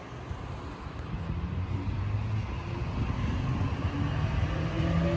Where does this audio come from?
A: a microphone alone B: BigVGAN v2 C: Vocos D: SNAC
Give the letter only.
A